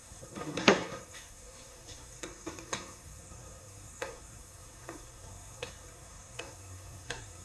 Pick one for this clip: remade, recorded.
remade